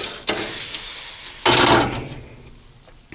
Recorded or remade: recorded